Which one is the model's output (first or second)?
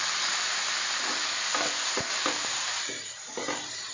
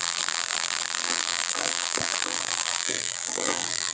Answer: second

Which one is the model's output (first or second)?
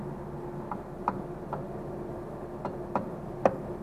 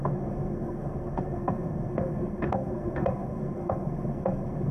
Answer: second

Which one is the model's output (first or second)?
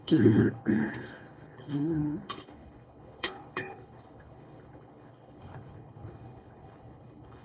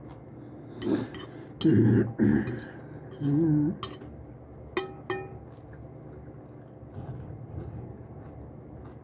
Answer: first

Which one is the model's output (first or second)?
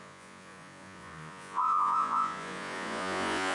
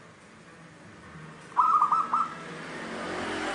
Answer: first